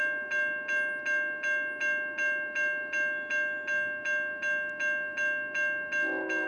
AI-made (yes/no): no